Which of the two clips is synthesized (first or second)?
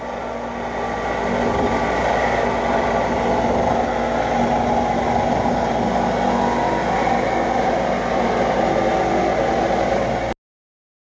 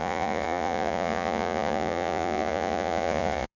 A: second